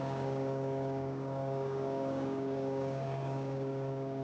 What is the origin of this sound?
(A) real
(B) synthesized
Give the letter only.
B